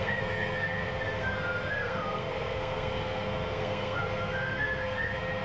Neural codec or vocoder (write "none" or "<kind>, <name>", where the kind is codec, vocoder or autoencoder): codec, SNAC